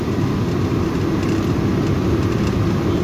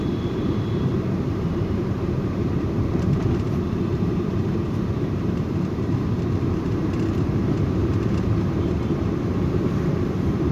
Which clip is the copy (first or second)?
second